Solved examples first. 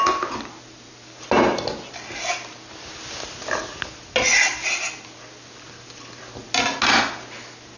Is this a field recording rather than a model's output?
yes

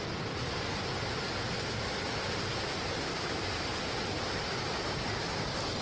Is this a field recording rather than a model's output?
yes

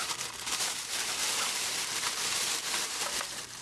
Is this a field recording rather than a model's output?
no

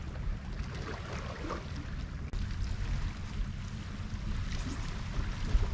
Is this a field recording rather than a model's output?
yes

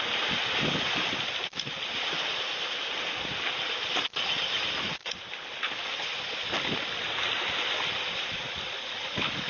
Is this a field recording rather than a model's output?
yes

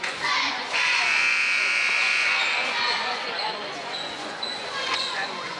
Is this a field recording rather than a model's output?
no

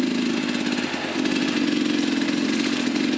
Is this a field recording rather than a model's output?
yes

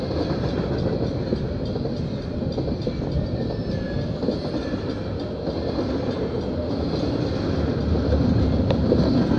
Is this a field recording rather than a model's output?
yes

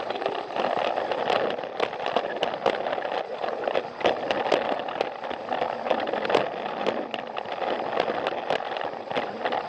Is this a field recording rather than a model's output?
yes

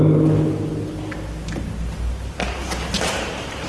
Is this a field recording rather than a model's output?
yes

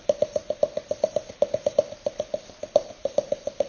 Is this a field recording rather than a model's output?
no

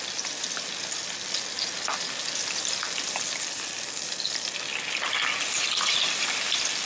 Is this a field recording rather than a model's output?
yes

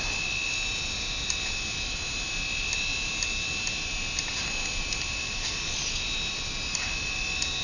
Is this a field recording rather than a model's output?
yes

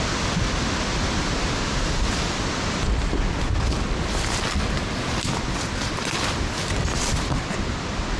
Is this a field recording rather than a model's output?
yes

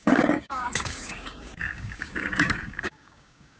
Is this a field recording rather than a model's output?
no